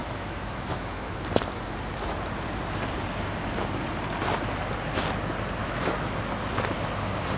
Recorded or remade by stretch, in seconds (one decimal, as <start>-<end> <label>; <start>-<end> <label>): 0.0-1.2 remade; 1.2-5.6 recorded; 5.6-6.2 remade; 6.2-7.4 recorded